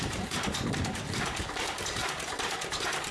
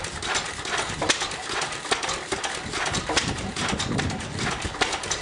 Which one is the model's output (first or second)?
first